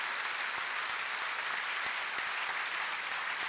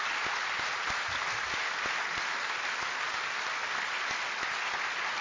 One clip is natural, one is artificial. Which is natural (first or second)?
second